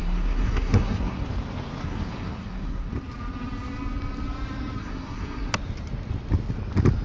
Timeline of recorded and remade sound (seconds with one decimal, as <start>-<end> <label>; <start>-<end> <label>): 0.0-1.3 remade; 1.3-1.8 recorded; 1.8-2.9 remade; 2.9-4.8 recorded; 4.8-5.5 remade; 5.5-7.0 recorded